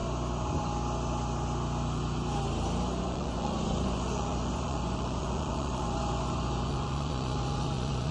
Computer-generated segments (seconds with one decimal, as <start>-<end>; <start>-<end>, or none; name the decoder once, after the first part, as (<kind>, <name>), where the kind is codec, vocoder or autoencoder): 3.0-8.1 (vocoder, Vocos)